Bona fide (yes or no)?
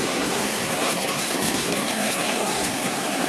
no